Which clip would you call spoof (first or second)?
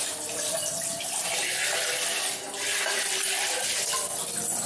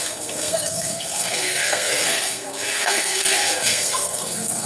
second